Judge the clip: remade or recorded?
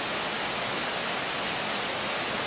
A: recorded